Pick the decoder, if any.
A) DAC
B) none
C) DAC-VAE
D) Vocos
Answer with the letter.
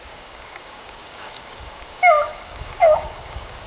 A